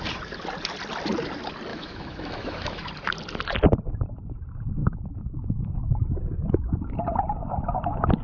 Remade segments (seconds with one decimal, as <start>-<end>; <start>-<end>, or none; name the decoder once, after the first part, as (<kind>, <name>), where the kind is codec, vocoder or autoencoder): 1.7-2.9 (autoencoder, DAC-VAE); 4.8-6.8